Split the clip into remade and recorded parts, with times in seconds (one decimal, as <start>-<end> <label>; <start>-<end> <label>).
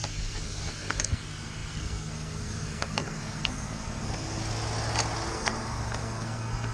0.0-4.4 remade; 4.4-5.3 recorded; 5.3-6.7 remade